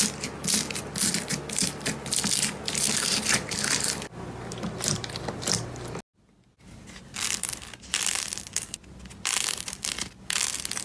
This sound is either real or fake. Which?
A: real